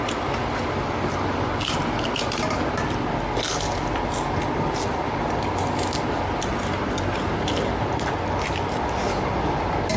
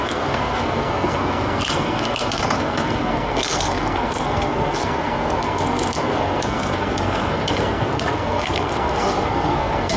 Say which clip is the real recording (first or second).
first